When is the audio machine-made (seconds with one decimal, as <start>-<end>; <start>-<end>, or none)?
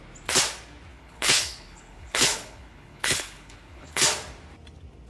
0.9-4.0